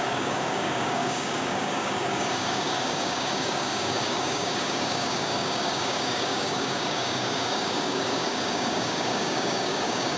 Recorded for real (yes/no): no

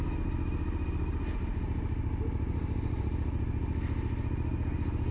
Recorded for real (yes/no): yes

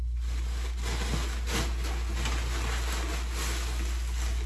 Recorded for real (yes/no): yes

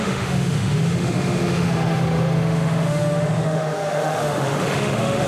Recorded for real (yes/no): no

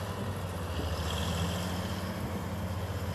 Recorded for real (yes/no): yes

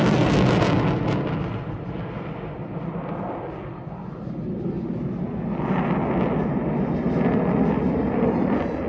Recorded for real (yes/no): yes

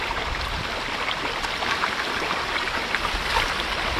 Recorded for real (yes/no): yes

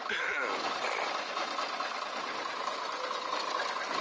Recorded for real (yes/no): yes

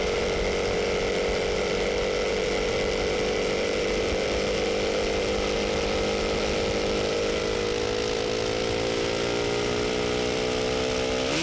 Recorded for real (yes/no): no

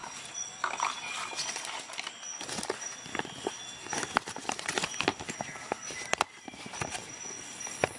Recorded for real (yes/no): yes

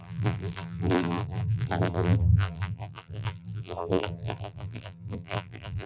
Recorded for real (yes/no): no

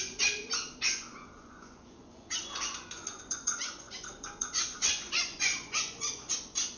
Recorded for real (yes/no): no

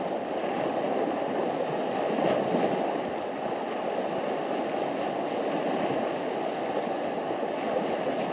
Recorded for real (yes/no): yes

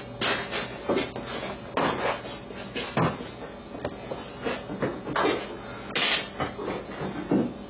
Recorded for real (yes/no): yes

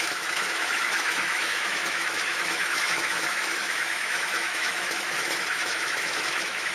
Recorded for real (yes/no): no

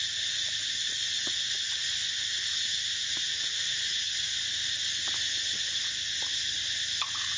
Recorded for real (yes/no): yes